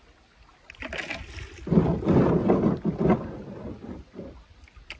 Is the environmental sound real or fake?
real